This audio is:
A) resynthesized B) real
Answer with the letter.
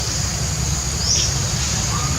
B